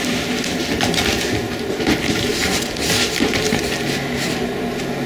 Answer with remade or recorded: recorded